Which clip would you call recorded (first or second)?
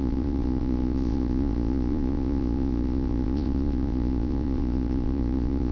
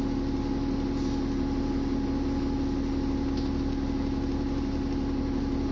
second